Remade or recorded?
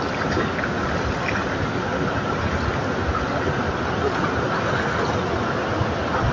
recorded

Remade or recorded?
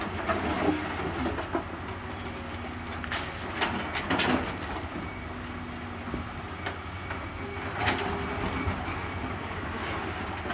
recorded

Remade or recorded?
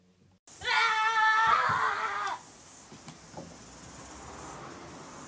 recorded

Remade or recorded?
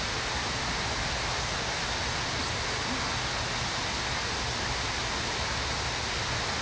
recorded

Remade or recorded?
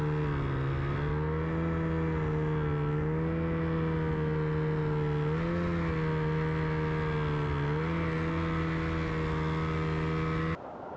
recorded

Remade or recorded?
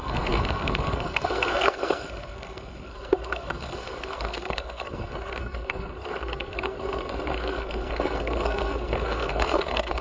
remade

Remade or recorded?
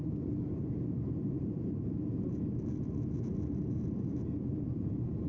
remade